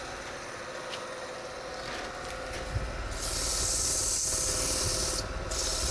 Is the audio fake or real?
real